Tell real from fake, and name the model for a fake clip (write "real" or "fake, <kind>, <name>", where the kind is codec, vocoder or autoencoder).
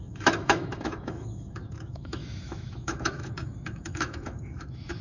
fake, autoencoder, DAC-VAE